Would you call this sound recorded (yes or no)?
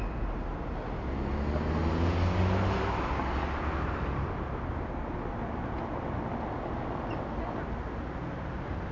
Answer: yes